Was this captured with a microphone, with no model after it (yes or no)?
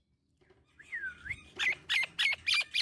yes